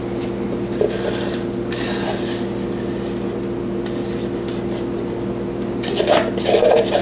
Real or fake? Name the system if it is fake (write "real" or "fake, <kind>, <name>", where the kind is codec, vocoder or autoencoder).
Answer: real